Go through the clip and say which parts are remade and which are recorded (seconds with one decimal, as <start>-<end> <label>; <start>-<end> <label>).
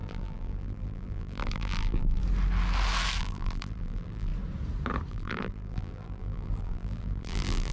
0.0-2.2 remade; 2.2-3.2 recorded; 3.2-4.3 remade; 4.3-5.1 recorded; 5.1-7.7 remade